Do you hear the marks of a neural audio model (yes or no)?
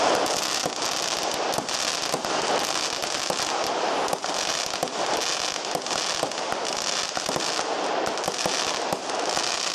no